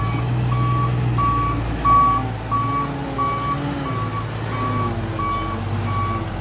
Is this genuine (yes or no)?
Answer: yes